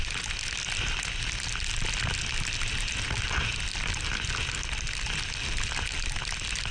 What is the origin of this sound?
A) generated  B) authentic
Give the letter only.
B